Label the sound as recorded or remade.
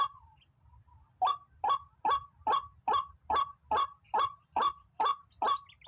recorded